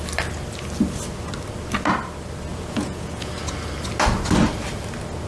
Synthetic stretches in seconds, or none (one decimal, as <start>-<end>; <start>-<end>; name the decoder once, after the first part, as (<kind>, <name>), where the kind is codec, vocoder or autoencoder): 2.5-3.3 (vocoder, Vocos)